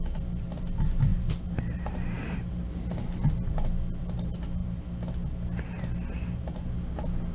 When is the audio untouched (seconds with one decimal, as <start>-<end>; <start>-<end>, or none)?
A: 0.0-7.3